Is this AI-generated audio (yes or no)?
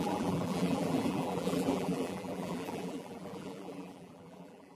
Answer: yes